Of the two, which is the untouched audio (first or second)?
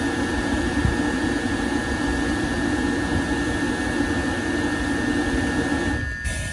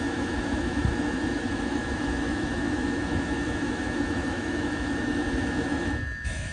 first